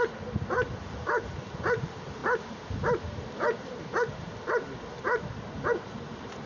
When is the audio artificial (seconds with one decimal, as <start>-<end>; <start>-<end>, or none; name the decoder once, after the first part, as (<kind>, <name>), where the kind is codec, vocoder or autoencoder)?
none